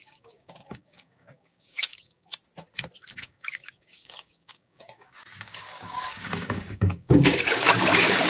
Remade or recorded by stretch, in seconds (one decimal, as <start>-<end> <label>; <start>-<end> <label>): 0.0-2.3 remade; 2.3-3.1 recorded; 3.1-8.3 remade